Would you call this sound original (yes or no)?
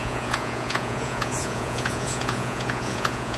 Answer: no